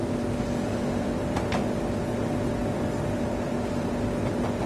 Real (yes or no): yes